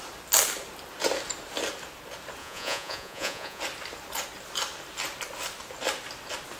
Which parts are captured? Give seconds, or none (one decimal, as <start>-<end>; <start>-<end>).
0.0-2.4; 3.6-6.6